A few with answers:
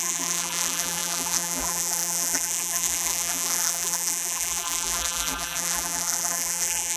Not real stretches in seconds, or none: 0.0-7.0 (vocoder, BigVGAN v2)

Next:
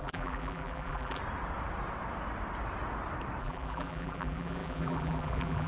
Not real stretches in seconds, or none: 0.0-1.2 (vocoder, BigVGAN v2); 3.4-5.7

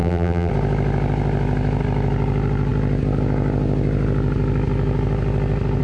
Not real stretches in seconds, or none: 0.0-0.5 (vocoder, BigVGAN v2)

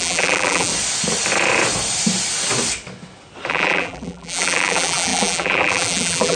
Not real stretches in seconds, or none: 0.0-0.7 (vocoder, BigVGAN v2); 3.5-6.4

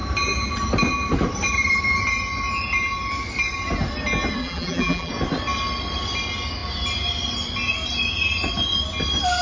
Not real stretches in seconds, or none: 4.4-5.1 (vocoder, BigVGAN v2)